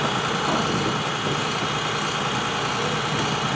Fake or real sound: real